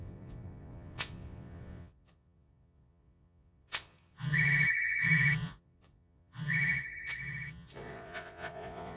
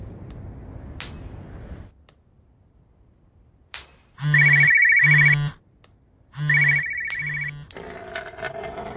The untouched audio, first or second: second